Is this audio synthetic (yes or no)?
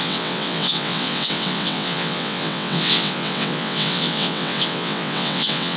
yes